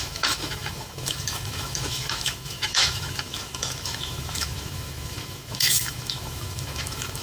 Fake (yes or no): yes